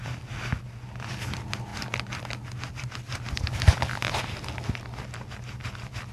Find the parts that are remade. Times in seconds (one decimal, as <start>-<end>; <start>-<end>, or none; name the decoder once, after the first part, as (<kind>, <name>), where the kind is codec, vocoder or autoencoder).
none